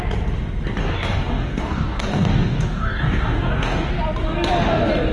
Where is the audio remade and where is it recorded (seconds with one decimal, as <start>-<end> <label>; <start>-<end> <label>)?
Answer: 0.0-0.8 recorded; 0.8-3.9 remade; 3.9-5.1 recorded